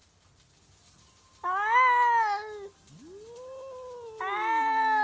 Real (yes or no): yes